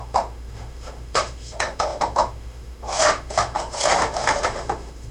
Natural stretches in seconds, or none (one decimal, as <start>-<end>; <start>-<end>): none